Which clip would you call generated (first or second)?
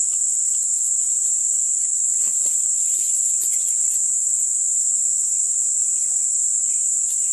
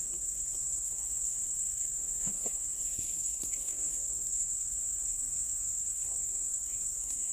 second